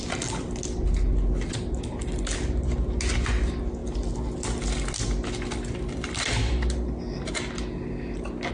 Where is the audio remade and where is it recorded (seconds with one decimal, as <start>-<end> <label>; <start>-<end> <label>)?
0.0-8.5 recorded